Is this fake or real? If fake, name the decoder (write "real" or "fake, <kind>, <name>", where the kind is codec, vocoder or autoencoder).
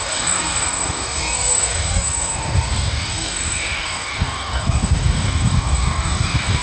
fake, codec, DAC